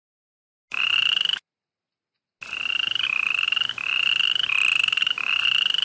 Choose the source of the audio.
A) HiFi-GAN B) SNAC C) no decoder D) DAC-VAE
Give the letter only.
C